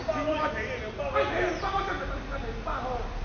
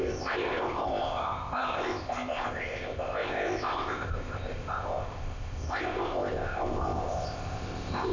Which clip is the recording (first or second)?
first